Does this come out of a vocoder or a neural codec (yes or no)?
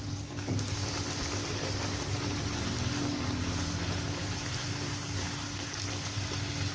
no